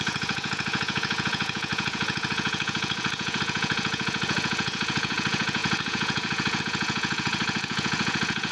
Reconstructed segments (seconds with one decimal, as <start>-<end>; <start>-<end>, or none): 0.0-8.5